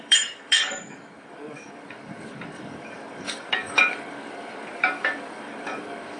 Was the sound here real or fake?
fake